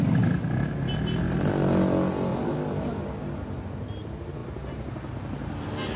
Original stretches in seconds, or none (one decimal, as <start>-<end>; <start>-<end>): 0.0-2.3; 3.0-6.0